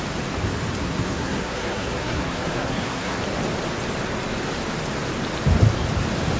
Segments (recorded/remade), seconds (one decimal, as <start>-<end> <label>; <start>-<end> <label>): 0.0-0.8 recorded; 0.8-3.2 remade; 3.2-6.4 recorded